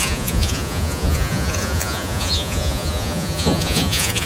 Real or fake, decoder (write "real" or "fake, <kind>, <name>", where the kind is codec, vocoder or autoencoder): fake, vocoder, Vocos